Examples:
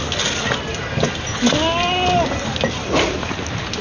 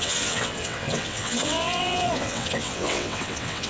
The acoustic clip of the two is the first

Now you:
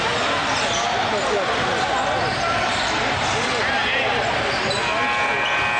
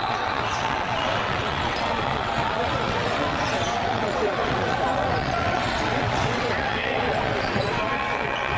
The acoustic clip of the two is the first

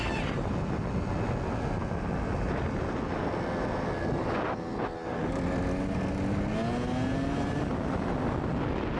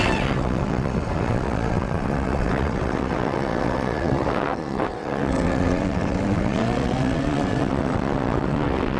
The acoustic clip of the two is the first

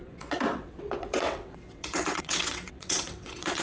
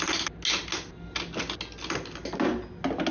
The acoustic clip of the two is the second